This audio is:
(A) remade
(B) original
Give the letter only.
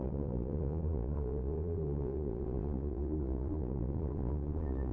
A